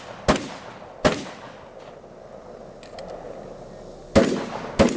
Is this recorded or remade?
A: recorded